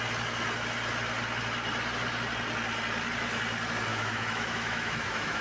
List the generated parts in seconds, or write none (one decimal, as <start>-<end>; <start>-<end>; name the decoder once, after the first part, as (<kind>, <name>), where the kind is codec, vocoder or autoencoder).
3.9-5.4 (autoencoder, DAC-VAE)

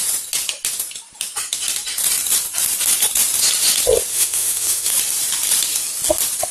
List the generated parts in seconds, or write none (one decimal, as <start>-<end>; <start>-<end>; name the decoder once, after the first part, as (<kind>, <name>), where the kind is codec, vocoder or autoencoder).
4.1-4.9 (autoencoder, DAC-VAE)

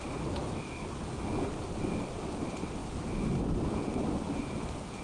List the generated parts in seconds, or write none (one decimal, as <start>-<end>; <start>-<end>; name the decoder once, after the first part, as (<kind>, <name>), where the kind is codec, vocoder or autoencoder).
0.4-1.3 (autoencoder, DAC-VAE)

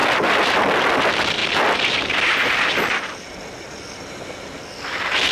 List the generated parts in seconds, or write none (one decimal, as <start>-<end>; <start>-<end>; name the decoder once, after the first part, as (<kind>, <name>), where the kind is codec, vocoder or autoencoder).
none

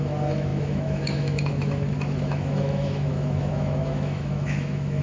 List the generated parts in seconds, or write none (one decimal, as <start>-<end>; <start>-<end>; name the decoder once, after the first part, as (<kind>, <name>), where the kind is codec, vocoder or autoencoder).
0.0-5.0 (autoencoder, DAC-VAE)

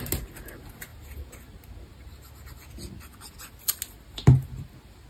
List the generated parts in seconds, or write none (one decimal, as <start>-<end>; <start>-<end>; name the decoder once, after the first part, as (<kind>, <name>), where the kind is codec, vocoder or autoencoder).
none

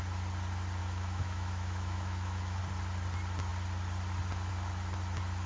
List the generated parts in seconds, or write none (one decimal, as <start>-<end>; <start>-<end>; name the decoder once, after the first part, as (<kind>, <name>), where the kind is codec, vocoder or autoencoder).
0.8-2.6 (autoencoder, DAC-VAE)

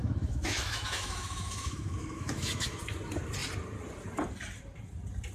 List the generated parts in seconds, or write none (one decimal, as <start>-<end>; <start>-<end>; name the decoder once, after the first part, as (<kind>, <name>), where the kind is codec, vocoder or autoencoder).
0.0-2.8 (autoencoder, DAC-VAE)